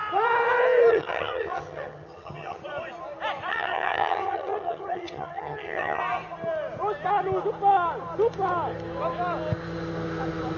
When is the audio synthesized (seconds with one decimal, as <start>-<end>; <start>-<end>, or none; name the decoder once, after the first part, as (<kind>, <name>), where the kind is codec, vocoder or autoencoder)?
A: 0.9-2.6 (vocoder, HiFi-GAN); 3.5-6.0